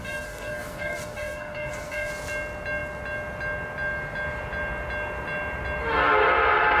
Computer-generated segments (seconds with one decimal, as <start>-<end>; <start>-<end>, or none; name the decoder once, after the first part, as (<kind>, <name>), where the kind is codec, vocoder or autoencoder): 0.0-2.1 (codec, SNAC)